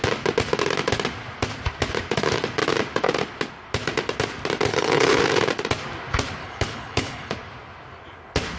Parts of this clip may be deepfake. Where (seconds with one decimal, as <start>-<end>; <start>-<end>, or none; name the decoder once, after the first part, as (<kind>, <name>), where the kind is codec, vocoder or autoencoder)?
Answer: 4.7-5.2 (codec, HILCodec); 6.4-7.3